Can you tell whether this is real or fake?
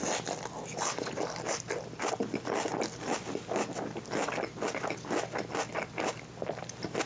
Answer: real